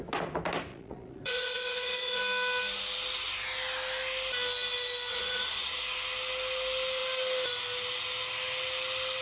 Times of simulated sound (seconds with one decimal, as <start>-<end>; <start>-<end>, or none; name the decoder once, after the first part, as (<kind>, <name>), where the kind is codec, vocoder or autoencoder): 0.7-2.2 (vocoder, Vocos); 5.1-5.8